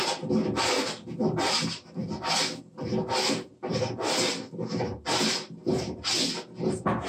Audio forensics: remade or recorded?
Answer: recorded